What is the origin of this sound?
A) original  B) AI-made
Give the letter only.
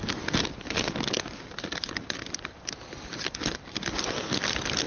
A